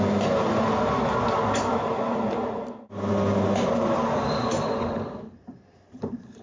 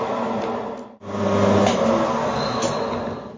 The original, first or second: second